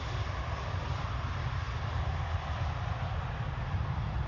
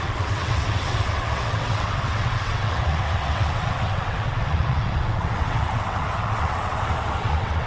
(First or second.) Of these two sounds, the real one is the first